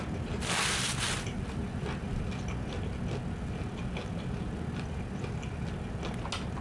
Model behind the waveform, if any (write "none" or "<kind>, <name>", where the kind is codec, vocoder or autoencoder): none